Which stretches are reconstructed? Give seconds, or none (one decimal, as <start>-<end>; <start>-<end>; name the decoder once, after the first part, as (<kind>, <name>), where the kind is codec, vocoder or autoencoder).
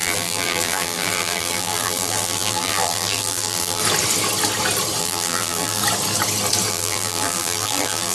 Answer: 0.0-3.8 (vocoder, BigVGAN v2); 5.0-5.8; 6.7-8.1